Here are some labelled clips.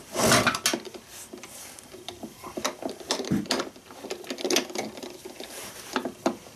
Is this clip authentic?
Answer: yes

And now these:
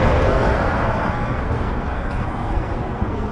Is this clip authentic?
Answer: no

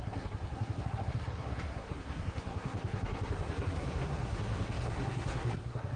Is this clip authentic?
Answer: no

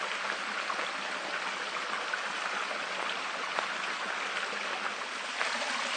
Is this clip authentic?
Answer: yes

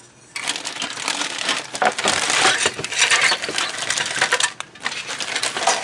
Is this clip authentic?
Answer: yes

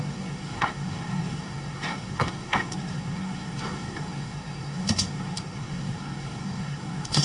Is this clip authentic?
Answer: no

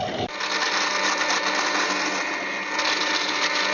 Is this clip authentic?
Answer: yes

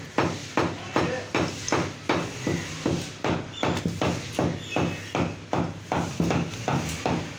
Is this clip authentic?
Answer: yes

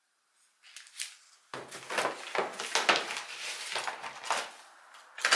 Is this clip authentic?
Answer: yes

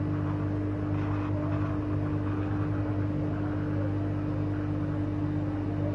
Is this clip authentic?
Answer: yes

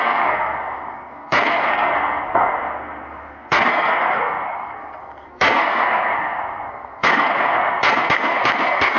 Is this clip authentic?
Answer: no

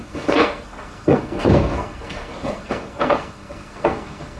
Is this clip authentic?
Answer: no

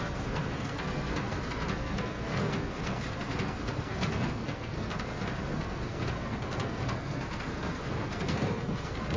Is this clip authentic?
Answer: no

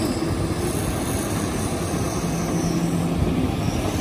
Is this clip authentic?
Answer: yes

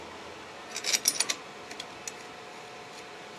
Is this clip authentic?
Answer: yes